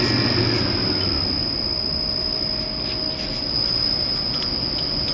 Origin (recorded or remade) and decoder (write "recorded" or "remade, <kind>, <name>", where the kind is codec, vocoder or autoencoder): recorded